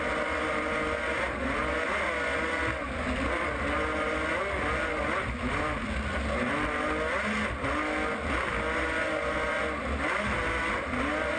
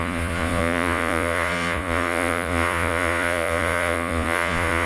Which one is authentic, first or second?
first